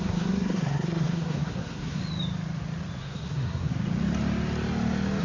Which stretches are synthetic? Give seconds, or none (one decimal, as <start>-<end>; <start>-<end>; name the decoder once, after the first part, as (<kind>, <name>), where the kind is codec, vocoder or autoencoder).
0.0-2.0 (codec, SNAC); 3.0-3.7